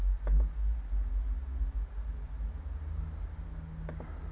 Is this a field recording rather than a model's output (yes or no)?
yes